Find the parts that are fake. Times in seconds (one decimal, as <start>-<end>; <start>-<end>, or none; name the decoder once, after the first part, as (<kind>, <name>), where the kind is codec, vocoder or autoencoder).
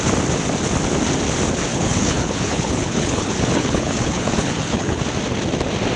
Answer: 1.7-5.0 (codec, HILCodec)